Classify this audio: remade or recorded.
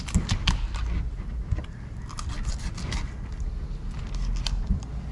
recorded